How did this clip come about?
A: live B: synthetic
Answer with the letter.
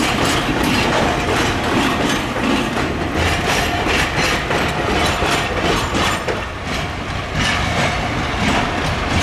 A